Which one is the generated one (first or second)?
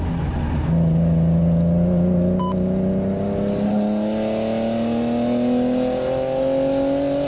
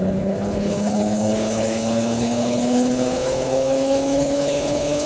second